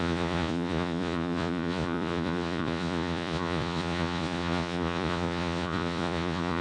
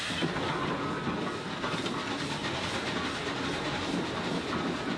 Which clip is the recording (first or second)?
second